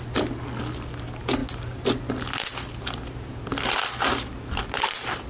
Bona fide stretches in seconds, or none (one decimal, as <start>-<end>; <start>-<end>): 0.0-5.3